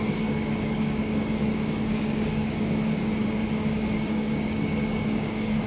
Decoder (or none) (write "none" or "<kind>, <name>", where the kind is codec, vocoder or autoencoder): codec, DAC